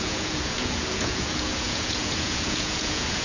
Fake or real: fake